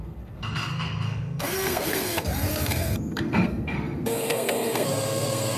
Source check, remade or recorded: remade